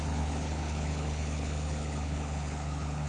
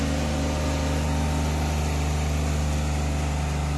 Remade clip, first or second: first